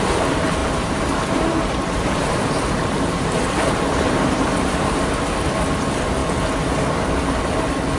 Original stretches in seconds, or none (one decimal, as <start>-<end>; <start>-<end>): 0.0-0.6; 4.7-8.0